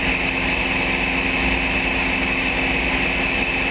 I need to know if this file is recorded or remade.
recorded